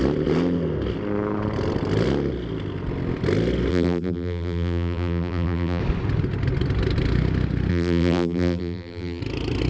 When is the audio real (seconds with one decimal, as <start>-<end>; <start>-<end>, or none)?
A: 0.0-3.7; 5.8-7.7; 9.2-9.7